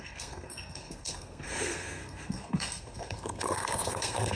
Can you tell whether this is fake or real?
fake